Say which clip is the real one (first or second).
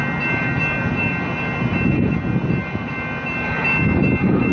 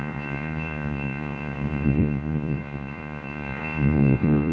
first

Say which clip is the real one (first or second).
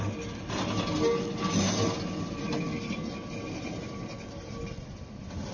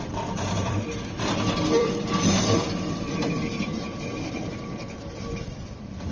first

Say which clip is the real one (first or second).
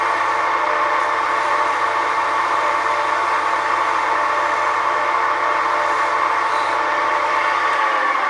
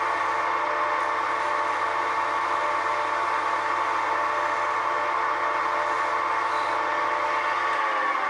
second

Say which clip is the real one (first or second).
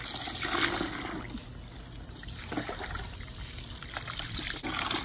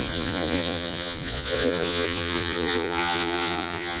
first